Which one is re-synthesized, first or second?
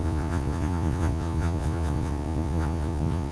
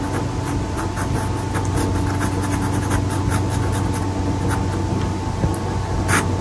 first